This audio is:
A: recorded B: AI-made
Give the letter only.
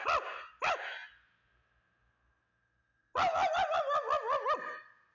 A